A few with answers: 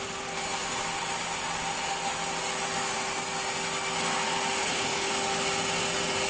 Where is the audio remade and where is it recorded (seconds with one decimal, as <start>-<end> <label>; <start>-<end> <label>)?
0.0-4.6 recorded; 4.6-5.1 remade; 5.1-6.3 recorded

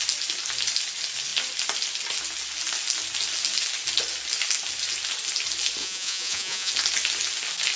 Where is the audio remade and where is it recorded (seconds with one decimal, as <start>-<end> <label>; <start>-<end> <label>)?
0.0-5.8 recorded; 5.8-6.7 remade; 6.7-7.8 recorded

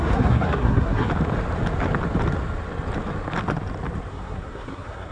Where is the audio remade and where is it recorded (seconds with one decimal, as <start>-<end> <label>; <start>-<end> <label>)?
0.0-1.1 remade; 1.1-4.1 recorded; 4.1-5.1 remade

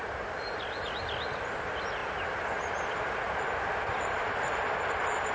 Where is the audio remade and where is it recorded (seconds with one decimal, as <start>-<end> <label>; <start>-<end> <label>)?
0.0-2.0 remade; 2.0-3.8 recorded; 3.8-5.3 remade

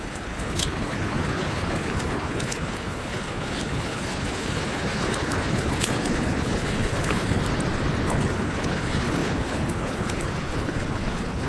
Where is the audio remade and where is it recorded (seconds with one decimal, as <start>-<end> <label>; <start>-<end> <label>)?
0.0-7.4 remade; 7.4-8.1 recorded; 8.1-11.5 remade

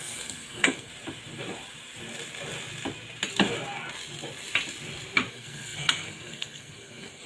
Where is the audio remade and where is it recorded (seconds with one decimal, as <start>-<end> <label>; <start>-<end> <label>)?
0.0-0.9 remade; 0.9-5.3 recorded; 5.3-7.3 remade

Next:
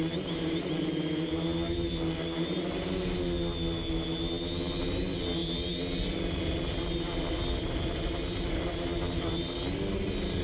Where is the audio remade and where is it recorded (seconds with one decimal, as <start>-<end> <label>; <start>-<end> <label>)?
0.0-10.4 recorded

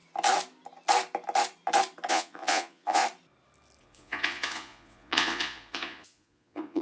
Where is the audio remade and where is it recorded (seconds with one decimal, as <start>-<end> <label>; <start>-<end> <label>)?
0.0-2.1 recorded; 2.1-3.0 remade; 3.0-3.8 recorded; 3.8-6.8 remade